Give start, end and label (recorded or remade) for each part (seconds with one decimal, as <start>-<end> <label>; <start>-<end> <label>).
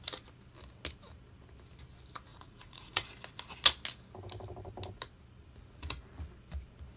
0.0-2.3 recorded; 2.3-3.1 remade; 3.1-7.0 recorded